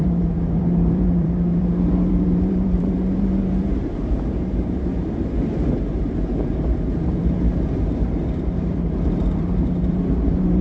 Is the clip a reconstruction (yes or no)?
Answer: yes